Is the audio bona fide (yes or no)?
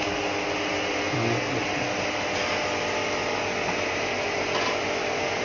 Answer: yes